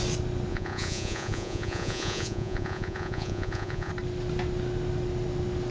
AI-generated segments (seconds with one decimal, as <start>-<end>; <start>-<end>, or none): 0.5-3.9